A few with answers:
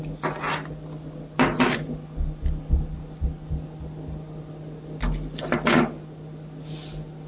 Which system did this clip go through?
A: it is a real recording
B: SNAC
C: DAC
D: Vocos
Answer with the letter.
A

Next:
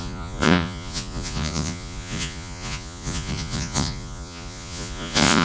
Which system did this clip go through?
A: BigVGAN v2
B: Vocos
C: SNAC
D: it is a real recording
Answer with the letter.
B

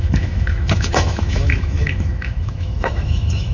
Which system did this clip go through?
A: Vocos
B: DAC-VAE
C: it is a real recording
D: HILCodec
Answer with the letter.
B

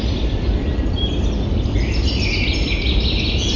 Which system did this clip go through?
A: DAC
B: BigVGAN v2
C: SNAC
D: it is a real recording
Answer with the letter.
D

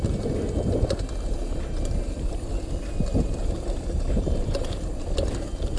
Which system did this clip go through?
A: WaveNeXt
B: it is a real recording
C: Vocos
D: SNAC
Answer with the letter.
B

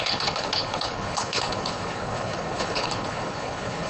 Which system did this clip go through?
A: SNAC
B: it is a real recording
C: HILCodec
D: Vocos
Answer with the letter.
C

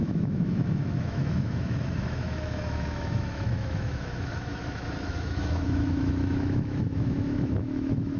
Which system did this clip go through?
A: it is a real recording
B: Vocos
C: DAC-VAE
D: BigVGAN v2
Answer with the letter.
C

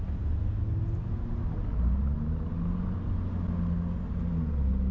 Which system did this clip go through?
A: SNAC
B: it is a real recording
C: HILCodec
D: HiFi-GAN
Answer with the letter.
B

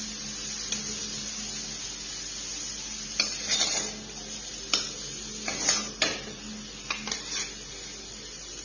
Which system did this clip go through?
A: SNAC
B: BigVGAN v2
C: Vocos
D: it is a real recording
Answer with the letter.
D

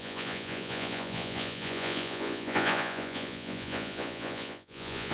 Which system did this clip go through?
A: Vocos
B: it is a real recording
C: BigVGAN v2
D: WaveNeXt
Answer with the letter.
A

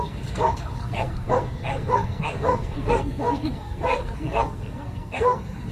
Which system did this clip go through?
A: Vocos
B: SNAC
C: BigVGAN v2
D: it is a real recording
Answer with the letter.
B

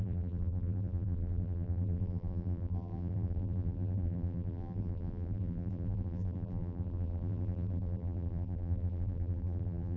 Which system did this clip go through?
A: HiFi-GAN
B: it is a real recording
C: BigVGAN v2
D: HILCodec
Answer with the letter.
C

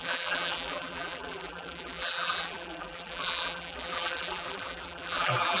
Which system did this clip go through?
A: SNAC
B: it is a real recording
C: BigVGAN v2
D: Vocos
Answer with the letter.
C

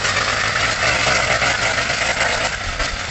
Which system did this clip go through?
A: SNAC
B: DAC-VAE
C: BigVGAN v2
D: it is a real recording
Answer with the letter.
D